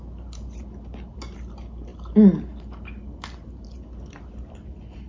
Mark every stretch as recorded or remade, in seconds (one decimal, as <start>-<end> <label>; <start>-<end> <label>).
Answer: 0.0-5.1 recorded